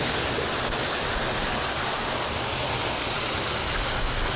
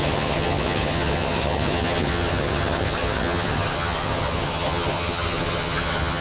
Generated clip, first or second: second